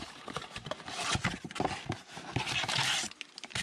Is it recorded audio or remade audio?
recorded